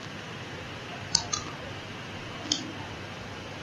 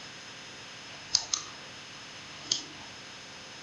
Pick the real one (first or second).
first